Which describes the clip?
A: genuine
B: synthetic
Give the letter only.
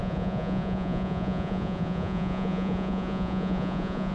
B